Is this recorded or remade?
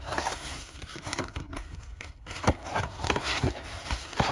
remade